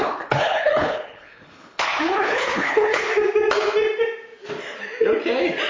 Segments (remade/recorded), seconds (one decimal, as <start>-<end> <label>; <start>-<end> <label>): 0.0-3.1 remade; 3.1-5.7 recorded